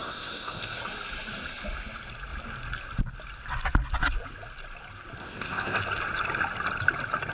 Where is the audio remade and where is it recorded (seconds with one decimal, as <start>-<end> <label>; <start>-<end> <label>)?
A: 0.0-0.8 remade; 0.8-5.2 recorded; 5.2-5.8 remade; 5.8-7.3 recorded